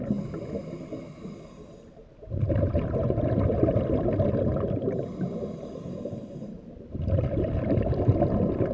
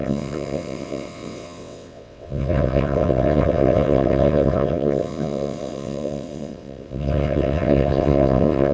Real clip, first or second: first